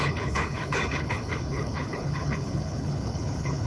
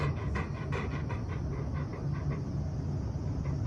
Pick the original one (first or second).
second